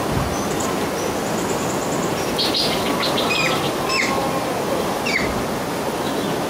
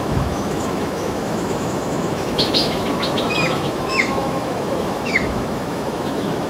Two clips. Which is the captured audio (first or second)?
first